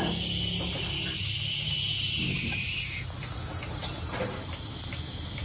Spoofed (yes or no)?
no